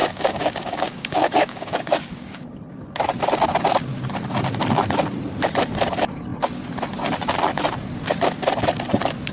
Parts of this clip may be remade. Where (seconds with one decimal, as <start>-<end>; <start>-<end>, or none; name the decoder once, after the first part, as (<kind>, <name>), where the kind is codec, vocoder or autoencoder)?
0.0-2.6 (codec, DAC)